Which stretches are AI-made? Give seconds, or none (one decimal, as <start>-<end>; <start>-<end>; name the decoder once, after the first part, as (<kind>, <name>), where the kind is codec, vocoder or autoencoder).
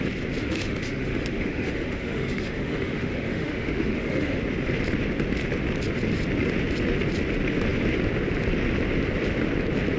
0.4-4.4 (autoencoder, DAC-VAE)